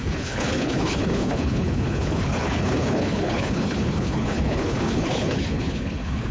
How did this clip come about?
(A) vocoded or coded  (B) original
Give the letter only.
A